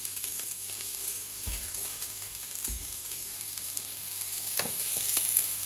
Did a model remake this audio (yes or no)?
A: yes